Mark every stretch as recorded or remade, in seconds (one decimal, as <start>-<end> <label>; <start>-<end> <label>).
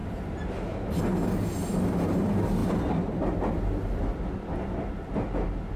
0.0-1.0 remade; 1.0-5.8 recorded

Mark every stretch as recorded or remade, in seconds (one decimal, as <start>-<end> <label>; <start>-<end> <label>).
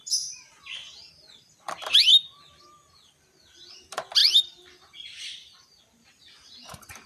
0.0-4.2 recorded; 4.2-6.2 remade; 6.2-7.1 recorded